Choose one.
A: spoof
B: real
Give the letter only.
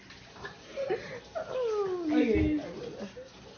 B